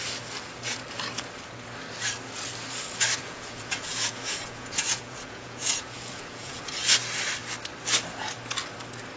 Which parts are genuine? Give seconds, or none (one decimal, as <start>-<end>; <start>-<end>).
0.0-3.2; 6.6-9.2